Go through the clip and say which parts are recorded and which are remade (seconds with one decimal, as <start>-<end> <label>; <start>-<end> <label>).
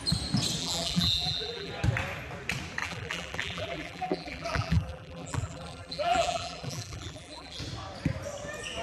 0.0-0.6 recorded; 0.6-1.7 remade; 1.7-2.8 recorded; 2.8-7.6 remade; 7.6-8.8 recorded